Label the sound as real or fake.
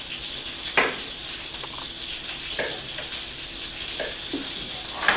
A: real